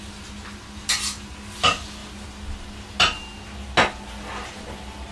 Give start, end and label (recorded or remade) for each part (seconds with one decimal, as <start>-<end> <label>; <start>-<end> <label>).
0.0-5.1 recorded